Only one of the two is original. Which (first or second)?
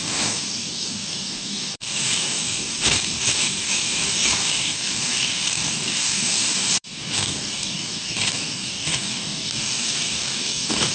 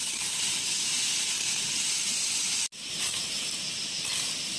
second